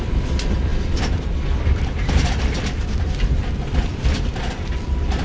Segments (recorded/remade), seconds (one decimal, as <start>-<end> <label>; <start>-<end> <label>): 0.0-5.2 remade